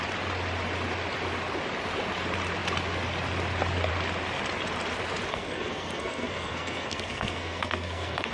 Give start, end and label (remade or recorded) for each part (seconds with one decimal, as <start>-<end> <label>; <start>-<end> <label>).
0.0-5.3 recorded; 5.3-8.3 remade